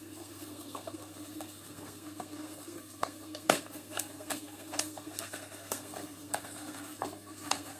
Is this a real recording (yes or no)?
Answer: no